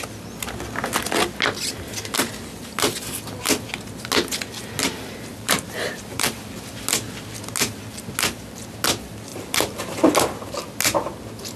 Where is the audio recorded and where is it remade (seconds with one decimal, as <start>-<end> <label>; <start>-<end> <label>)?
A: 0.0-5.3 recorded; 5.3-6.5 remade; 6.5-9.3 recorded; 9.3-10.1 remade; 10.1-11.6 recorded